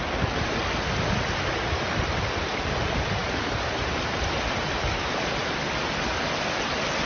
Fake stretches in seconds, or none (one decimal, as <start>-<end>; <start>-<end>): 3.2-4.6